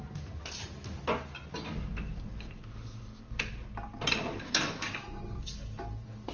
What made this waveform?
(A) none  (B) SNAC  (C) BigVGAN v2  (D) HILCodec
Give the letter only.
A